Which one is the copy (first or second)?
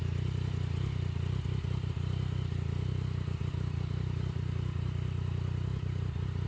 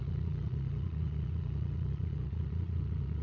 second